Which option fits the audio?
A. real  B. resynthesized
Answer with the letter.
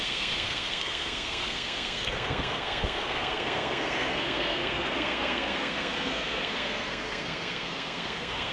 B